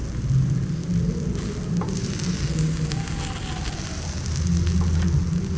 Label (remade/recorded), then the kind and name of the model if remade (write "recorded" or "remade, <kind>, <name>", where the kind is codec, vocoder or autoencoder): recorded